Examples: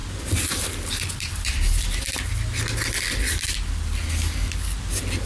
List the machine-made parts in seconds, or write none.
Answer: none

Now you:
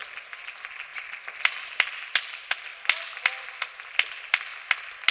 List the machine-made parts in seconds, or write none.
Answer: none

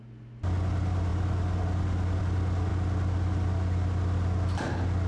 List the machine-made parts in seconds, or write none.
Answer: none

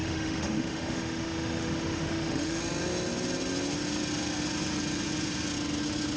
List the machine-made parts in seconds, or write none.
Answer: 0.0-2.6 (autoencoder, DAC-VAE)

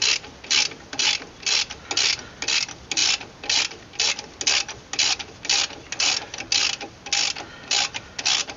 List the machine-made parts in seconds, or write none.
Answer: none

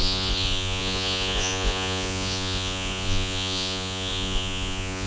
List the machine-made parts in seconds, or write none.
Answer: 0.0-5.1 (vocoder, Vocos)

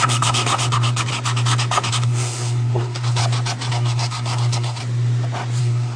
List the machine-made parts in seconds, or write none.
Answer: 0.0-1.1 (codec, SNAC); 1.9-3.2; 3.7-4.8; 5.6-6.0